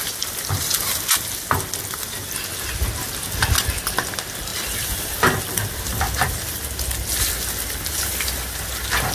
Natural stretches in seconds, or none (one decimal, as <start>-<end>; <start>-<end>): 0.0-9.1